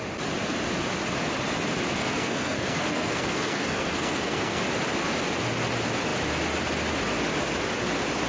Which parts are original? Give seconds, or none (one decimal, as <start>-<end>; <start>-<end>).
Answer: 0.0-2.0; 4.6-8.3